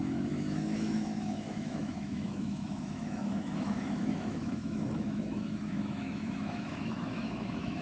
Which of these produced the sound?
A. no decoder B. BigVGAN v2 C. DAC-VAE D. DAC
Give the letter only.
C